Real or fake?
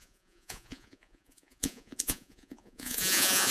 fake